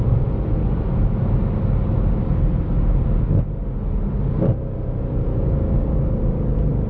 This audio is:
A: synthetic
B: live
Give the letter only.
B